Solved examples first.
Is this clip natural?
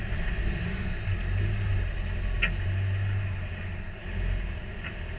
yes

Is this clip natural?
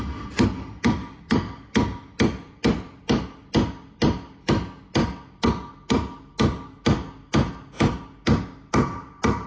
yes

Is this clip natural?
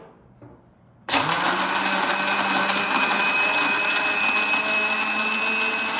yes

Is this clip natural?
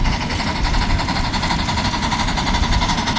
yes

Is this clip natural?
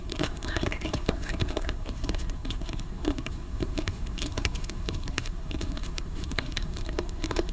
no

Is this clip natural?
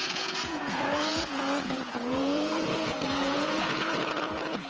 no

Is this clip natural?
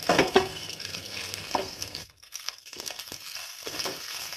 no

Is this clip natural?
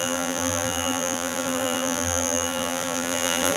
no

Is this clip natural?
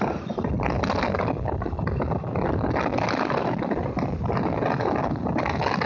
yes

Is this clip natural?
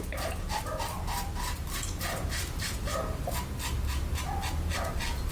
yes